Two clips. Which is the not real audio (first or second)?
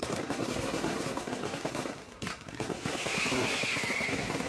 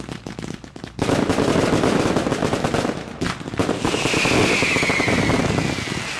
first